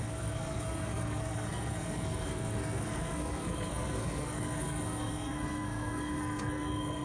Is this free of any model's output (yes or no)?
no